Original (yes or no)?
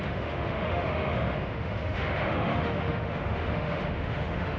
no